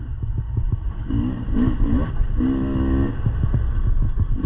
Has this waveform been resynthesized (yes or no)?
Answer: no